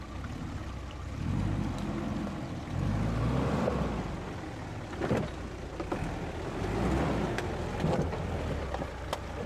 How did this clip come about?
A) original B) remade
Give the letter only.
A